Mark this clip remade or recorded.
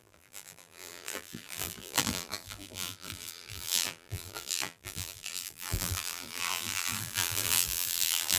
remade